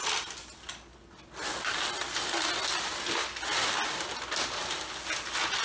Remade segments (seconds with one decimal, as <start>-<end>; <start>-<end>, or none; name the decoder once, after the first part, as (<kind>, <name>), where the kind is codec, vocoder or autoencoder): none